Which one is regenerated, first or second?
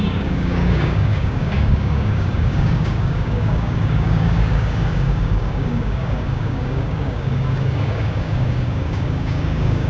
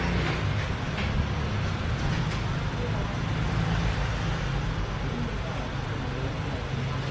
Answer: first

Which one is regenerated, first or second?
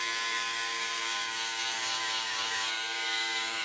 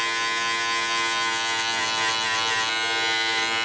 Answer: first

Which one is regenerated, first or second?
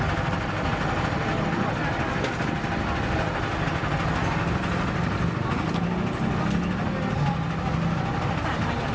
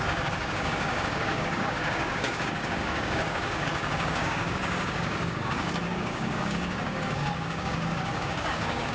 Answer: second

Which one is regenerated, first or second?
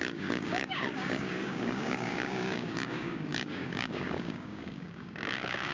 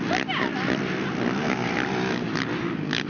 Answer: first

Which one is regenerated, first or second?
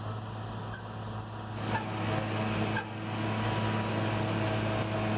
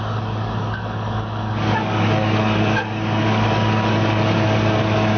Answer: second